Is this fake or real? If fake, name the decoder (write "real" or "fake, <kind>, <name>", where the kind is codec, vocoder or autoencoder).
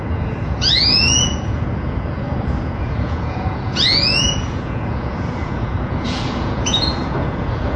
fake, vocoder, Vocos